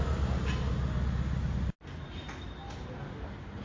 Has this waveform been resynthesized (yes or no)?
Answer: no